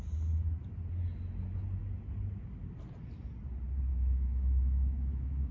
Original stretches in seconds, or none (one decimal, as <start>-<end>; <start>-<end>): 0.0-3.9

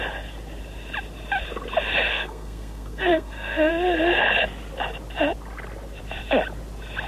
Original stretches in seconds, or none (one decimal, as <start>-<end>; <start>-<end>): 0.0-2.1; 3.7-7.1

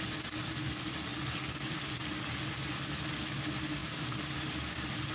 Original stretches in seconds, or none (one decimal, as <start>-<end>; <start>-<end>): 0.0-5.1

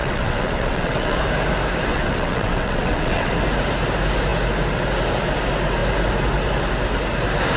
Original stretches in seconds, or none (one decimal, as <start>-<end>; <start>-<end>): 1.2-1.9; 3.3-7.6

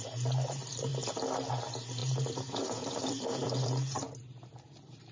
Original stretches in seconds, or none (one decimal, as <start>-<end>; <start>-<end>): 0.0-2.0; 4.1-5.1

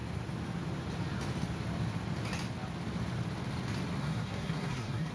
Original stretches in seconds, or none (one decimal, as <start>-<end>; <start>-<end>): 0.0-4.0